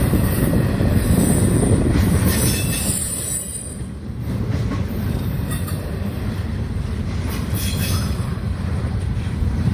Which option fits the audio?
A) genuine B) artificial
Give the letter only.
B